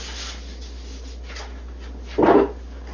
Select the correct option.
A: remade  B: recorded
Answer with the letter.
B